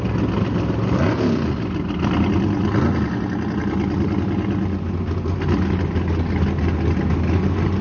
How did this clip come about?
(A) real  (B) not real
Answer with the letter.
A